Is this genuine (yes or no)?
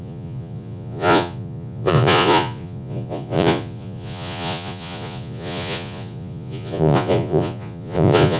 no